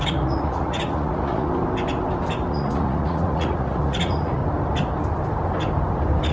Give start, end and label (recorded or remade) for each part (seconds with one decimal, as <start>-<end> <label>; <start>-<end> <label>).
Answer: 0.0-1.5 remade; 1.5-2.5 recorded; 2.5-4.4 remade; 4.4-6.3 recorded